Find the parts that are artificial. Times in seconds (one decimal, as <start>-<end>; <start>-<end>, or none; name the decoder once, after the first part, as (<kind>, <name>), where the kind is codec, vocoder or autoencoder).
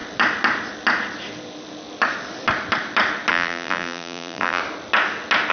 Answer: 3.3-4.6 (vocoder, BigVGAN v2)